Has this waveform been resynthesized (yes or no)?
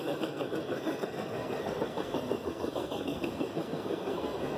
yes